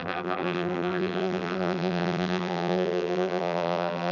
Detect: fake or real fake